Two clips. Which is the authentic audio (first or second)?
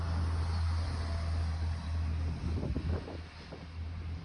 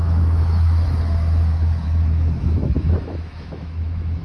first